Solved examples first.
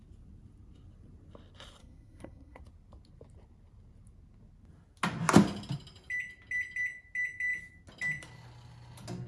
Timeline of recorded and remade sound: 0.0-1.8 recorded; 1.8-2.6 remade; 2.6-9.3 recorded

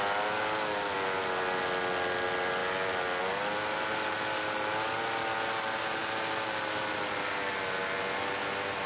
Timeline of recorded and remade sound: 0.0-8.9 recorded

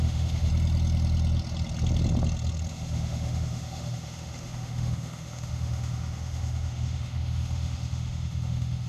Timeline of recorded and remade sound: 0.0-0.5 remade; 0.5-2.7 recorded; 2.7-8.9 remade